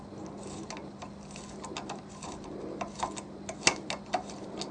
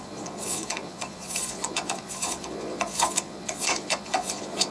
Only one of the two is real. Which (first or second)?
first